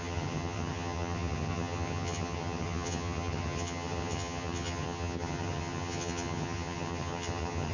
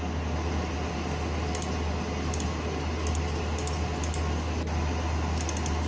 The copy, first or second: first